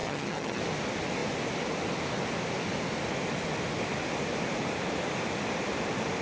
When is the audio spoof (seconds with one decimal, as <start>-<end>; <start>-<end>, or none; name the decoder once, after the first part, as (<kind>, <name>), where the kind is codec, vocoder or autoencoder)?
0.0-0.6 (vocoder, HiFi-GAN)

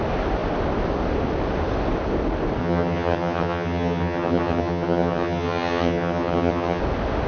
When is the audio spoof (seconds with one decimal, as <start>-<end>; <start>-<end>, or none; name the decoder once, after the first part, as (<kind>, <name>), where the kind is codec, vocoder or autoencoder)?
2.6-6.8 (vocoder, HiFi-GAN)

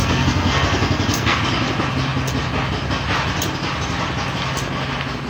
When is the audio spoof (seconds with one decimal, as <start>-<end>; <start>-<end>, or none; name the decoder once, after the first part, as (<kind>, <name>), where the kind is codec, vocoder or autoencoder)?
0.0-1.4 (codec, SNAC)

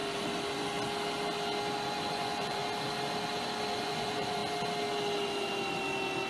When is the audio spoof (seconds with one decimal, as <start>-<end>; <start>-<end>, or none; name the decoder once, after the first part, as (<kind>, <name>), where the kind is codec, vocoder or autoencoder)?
2.1-2.6 (vocoder, Vocos); 3.8-4.4

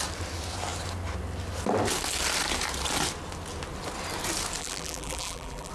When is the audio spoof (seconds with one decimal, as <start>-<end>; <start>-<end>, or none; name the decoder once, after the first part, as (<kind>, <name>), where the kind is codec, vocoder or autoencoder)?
4.6-5.7 (vocoder, BigVGAN v2)

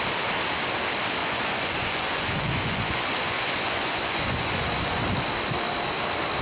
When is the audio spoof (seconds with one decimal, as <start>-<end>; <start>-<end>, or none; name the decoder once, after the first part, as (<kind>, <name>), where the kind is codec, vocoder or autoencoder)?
1.2-5.0 (vocoder, Vocos)

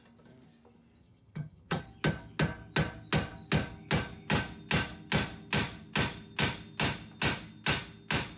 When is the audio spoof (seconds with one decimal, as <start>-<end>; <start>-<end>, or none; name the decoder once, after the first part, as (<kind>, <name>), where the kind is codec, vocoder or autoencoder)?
1.0-1.8 (vocoder, HiFi-GAN)